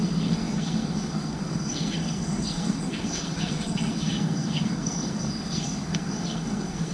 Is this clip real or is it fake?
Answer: fake